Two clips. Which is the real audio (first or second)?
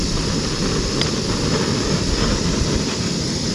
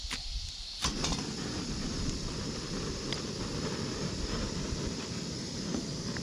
first